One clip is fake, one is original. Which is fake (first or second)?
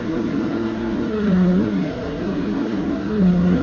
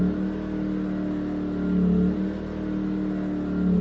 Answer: first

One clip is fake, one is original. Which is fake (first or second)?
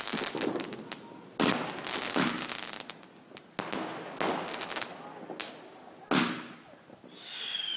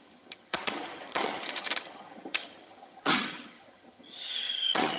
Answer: second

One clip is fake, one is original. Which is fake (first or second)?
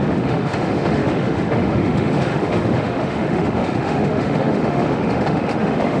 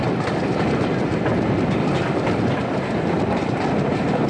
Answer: first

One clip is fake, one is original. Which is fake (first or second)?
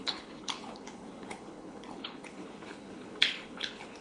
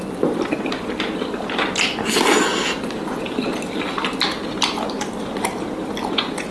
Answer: first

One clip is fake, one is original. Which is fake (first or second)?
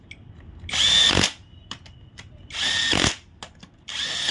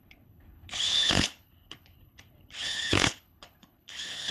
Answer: second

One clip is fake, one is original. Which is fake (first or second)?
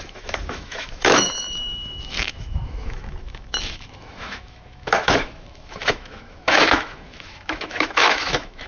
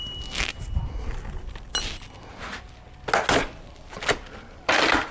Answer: first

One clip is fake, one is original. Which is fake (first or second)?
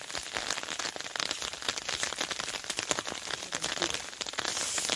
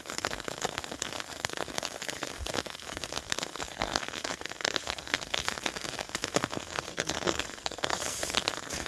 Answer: second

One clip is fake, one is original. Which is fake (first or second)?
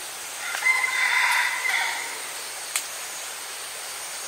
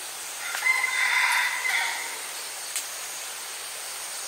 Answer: first